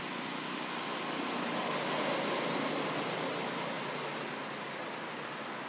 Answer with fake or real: real